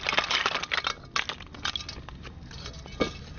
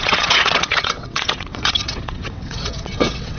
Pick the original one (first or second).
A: first